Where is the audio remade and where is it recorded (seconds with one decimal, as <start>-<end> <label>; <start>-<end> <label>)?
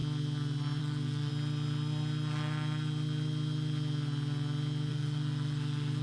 0.0-0.8 recorded; 0.8-1.3 remade; 1.3-4.9 recorded; 4.9-6.0 remade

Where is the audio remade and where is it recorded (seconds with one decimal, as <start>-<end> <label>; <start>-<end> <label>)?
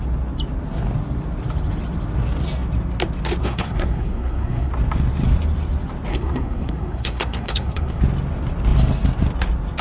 0.0-3.4 recorded; 3.4-4.7 remade; 4.7-6.1 recorded; 6.1-8.0 remade; 8.0-9.8 recorded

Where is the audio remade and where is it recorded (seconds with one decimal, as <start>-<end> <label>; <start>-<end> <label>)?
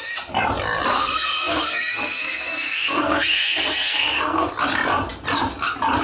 0.0-0.9 recorded; 0.9-4.5 remade; 4.5-6.0 recorded